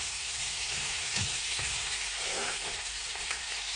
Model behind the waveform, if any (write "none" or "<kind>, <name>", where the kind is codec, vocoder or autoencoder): codec, SNAC